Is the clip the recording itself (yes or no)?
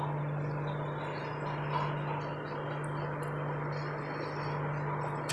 yes